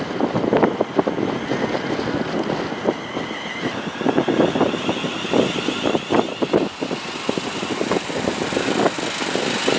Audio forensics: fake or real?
real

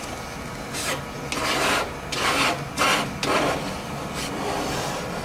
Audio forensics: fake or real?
real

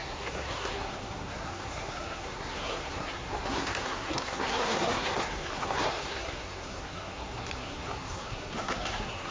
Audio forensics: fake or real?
fake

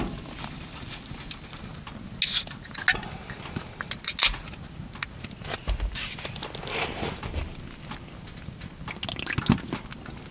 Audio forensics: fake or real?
real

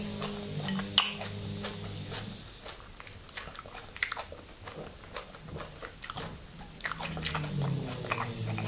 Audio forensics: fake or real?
real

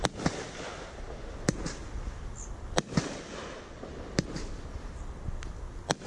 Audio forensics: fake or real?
real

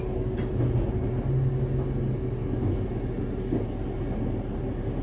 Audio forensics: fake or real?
real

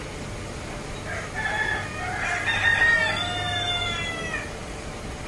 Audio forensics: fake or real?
real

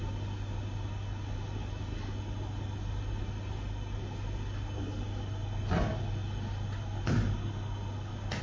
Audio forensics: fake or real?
real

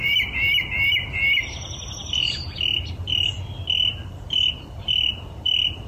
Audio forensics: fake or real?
real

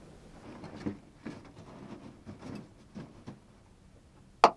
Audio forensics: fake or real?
real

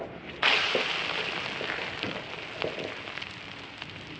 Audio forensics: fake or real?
real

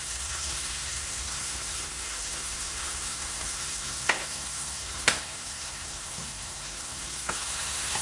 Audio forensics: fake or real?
fake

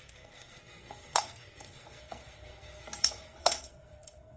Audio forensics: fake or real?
fake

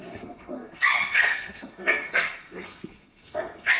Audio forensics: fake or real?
fake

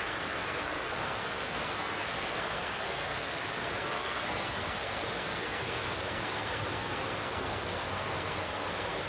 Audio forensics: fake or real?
fake